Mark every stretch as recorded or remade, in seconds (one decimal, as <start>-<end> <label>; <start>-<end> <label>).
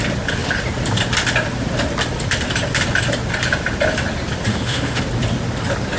0.0-4.5 recorded; 4.5-5.0 remade; 5.0-6.0 recorded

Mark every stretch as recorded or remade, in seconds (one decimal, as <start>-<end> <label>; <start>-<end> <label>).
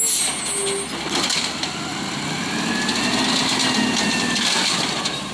0.0-5.3 recorded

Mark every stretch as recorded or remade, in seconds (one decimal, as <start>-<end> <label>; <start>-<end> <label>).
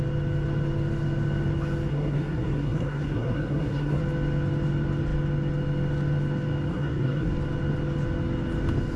0.0-1.9 recorded; 1.9-4.0 remade; 4.0-6.7 recorded; 6.7-7.3 remade; 7.3-9.0 recorded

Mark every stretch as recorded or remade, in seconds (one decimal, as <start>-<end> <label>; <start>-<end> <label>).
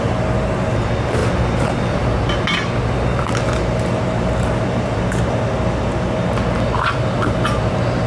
0.0-8.1 recorded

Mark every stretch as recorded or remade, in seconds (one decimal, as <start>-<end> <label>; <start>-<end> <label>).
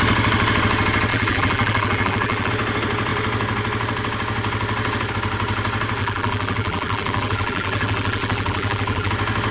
0.0-1.1 recorded; 1.1-2.5 remade; 2.5-6.0 recorded; 6.0-9.1 remade; 9.1-9.5 recorded